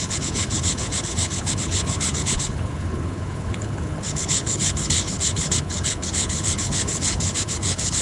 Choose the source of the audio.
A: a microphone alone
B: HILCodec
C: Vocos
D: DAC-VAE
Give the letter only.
B